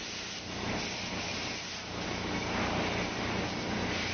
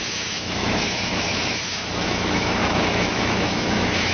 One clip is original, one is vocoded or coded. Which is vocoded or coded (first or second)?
second